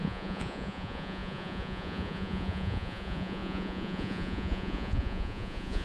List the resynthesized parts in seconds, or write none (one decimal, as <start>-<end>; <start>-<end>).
0.0-5.8